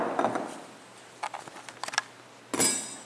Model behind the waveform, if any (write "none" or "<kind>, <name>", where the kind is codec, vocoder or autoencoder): none